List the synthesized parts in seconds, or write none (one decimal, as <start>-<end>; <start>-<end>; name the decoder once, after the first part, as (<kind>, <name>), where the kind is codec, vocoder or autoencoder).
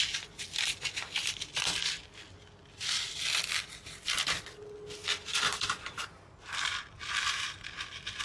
5.2-8.2 (vocoder, BigVGAN v2)